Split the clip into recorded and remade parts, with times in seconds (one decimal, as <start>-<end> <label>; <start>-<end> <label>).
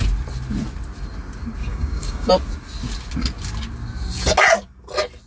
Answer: 0.0-1.6 recorded; 1.6-2.3 remade; 2.3-5.3 recorded